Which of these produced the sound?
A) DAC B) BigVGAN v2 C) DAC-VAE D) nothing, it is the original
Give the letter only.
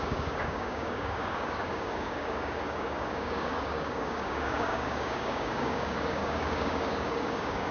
A